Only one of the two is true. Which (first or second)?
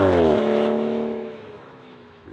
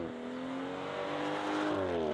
second